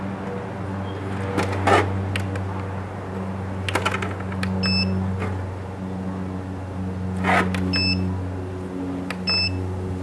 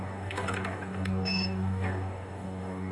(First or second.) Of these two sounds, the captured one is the first